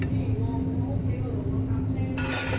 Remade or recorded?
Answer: recorded